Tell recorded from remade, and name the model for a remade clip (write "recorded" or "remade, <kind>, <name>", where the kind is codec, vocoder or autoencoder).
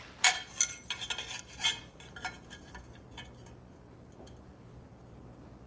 recorded